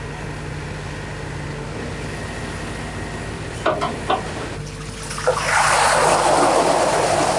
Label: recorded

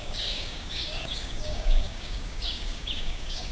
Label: remade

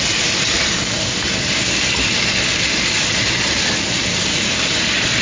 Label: recorded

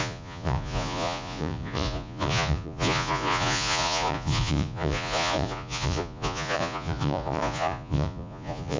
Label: remade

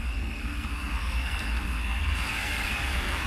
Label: remade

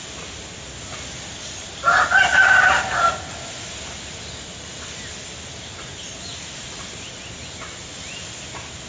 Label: recorded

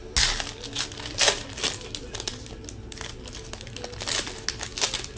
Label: recorded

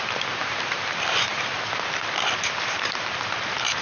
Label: remade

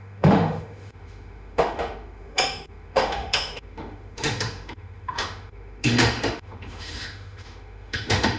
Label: remade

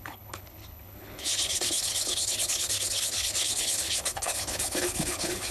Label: remade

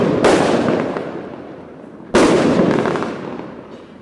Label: recorded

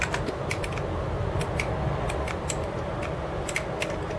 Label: recorded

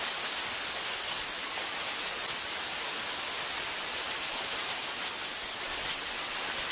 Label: recorded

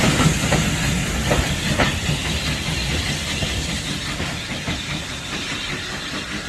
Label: recorded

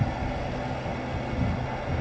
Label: recorded